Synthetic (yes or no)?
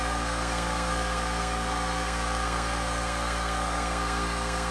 yes